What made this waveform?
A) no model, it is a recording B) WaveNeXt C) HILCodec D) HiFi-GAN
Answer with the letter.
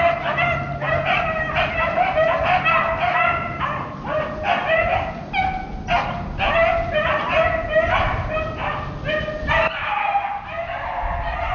A